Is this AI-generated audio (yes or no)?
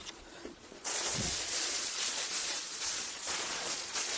yes